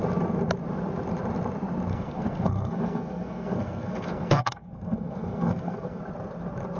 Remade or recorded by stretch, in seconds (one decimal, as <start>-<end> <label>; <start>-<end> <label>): 0.0-1.9 recorded; 1.9-6.0 remade; 6.0-6.8 recorded